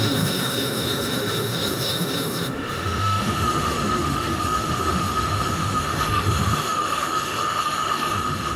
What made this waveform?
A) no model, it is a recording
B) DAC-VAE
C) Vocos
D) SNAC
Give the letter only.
B